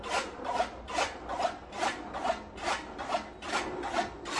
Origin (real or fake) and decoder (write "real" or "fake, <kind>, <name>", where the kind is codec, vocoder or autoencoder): real